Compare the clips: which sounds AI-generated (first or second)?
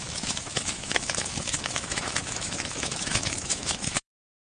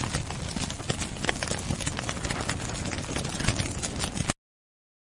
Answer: first